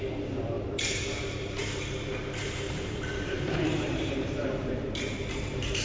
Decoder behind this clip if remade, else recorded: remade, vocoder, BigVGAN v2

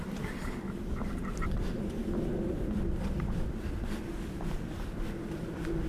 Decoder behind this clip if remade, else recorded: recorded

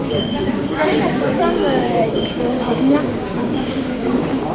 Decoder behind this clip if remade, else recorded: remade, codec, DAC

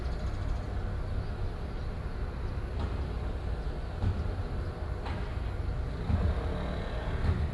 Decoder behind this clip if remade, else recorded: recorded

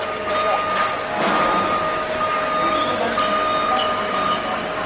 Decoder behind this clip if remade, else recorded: recorded